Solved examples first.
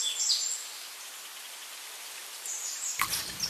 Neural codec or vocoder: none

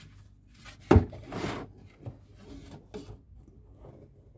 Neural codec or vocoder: none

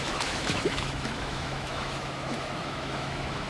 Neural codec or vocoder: autoencoder, DAC-VAE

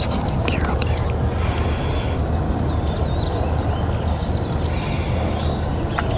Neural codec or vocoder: none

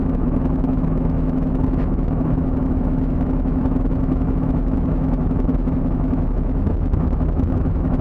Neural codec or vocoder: autoencoder, DAC-VAE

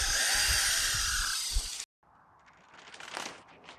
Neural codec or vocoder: none